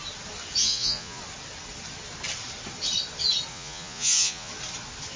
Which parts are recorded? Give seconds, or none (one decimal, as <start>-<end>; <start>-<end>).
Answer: 0.0-0.6; 1.2-3.5; 4.5-5.2